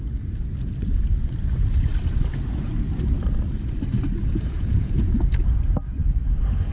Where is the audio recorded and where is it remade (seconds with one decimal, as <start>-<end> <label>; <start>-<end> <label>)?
0.0-4.2 recorded; 4.2-5.2 remade; 5.2-6.7 recorded